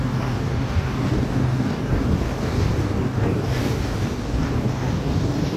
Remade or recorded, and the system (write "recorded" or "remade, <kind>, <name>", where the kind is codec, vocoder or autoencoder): remade, codec, DAC